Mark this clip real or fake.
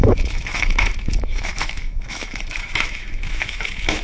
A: fake